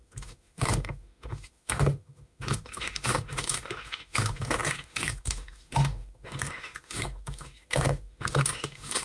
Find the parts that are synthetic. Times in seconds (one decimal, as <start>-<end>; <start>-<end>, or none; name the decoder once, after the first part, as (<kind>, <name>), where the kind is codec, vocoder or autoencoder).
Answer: 0.0-9.0 (autoencoder, DAC-VAE)